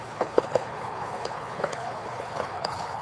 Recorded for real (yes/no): no